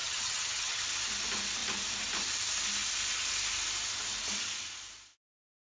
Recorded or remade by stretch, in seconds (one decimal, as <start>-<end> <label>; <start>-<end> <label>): 0.0-0.8 remade; 0.8-5.6 recorded